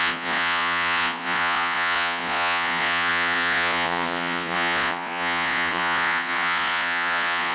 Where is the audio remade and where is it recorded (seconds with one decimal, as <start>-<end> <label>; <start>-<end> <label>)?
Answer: 0.0-7.5 remade